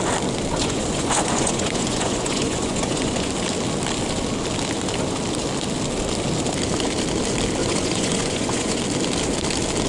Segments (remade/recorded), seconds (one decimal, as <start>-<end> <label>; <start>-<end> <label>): 0.0-0.6 recorded; 0.6-3.3 remade; 3.3-7.6 recorded; 7.6-8.8 remade; 8.8-9.9 recorded